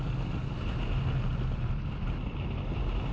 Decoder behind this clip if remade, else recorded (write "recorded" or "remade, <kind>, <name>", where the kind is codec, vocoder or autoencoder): recorded